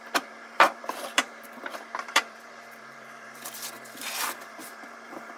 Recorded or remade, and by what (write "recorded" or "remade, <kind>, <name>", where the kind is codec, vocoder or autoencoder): remade, vocoder, BigVGAN v2